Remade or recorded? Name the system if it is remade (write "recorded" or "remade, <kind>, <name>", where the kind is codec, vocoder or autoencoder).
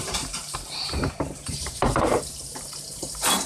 remade, vocoder, BigVGAN v2